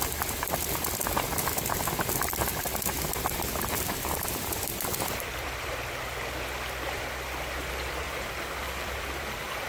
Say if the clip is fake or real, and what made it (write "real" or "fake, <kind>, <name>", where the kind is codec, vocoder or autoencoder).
fake, vocoder, BigVGAN v2